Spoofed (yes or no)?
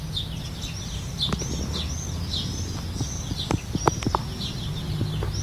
no